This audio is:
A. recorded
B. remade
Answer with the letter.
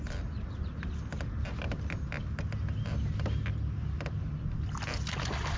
A